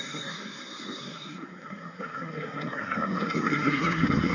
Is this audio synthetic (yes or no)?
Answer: yes